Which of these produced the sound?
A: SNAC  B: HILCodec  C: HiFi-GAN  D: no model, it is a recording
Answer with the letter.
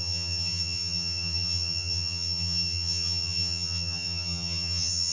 C